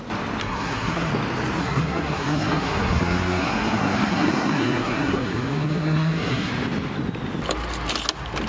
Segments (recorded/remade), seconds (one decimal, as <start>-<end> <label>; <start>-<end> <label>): 0.0-0.4 recorded; 0.4-1.1 remade; 1.1-1.6 recorded; 1.6-6.5 remade; 6.5-8.5 recorded